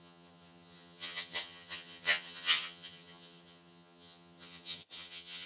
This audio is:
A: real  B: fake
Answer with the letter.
B